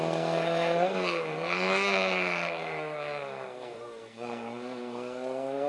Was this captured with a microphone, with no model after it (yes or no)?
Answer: no